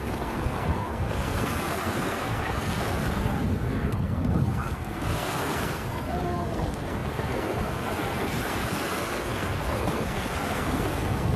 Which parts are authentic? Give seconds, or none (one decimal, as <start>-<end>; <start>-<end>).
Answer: none